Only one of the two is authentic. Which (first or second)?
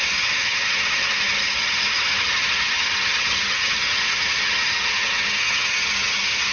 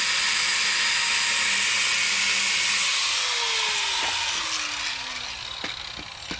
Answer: second